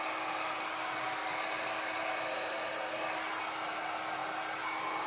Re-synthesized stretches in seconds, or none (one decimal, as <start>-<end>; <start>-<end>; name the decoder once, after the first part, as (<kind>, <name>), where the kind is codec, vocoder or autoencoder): none